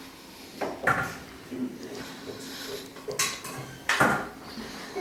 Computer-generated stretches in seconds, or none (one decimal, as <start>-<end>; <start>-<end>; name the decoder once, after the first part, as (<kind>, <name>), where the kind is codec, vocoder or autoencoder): 0.5-3.1 (vocoder, BigVGAN v2)

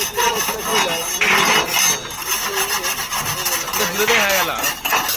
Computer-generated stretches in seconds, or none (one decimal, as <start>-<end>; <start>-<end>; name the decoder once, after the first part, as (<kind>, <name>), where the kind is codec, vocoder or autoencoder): none

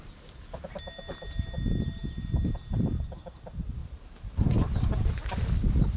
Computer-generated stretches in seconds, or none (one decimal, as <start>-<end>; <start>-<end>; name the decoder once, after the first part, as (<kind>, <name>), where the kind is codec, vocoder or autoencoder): 3.8-5.2 (vocoder, BigVGAN v2)

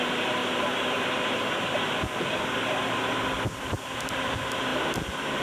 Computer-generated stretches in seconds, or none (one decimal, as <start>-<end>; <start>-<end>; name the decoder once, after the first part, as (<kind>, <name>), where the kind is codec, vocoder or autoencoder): none

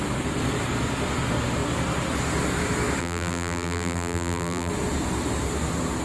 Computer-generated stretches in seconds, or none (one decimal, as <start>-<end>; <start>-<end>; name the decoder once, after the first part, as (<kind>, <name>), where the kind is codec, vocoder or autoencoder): 3.0-4.7 (vocoder, BigVGAN v2)